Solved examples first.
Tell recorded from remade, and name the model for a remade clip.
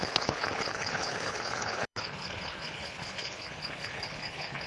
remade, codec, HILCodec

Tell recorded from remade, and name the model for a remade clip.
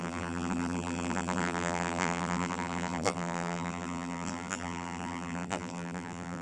remade, vocoder, BigVGAN v2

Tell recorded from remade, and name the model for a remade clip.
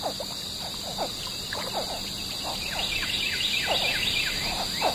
recorded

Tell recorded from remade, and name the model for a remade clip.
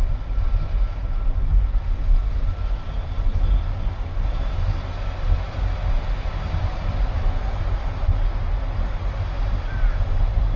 recorded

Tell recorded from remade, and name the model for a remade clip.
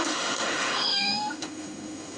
remade, autoencoder, DAC-VAE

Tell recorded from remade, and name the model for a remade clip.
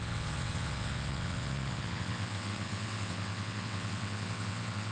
remade, vocoder, WaveNeXt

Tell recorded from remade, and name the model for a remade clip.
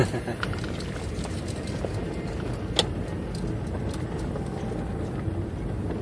recorded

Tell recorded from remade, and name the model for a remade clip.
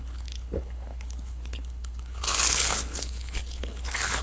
remade, codec, HILCodec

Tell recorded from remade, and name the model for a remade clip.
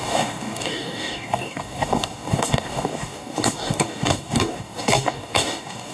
remade, codec, DAC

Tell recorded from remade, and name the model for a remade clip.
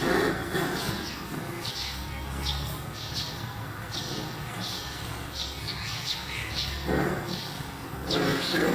remade, codec, SNAC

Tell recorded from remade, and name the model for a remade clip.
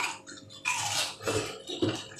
recorded